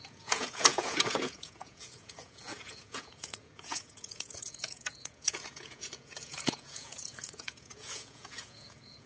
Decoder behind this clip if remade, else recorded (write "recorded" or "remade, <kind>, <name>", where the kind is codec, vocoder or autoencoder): remade, vocoder, Vocos